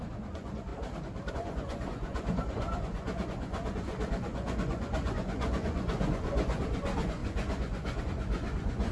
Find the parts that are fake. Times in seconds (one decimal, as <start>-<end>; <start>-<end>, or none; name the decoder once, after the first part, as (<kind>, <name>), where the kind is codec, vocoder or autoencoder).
0.0-0.7 (vocoder, Vocos); 1.3-8.9

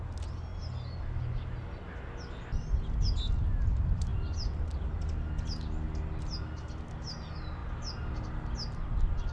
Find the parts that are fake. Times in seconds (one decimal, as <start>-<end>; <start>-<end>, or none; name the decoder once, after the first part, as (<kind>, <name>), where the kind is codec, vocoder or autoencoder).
none

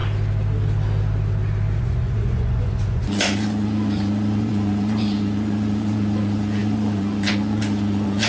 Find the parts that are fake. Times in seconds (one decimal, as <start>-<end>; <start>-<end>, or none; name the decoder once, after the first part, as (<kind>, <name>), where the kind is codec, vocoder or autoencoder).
1.8-8.3 (vocoder, Vocos)

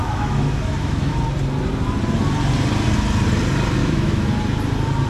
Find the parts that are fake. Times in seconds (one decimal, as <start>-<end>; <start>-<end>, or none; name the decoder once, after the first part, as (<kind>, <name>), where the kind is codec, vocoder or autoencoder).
0.0-1.2 (autoencoder, DAC-VAE); 3.8-4.3